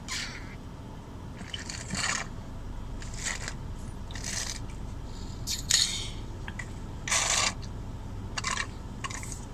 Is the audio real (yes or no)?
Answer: yes